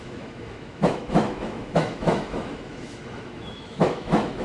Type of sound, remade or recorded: remade